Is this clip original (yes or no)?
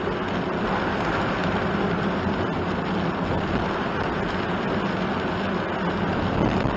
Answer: yes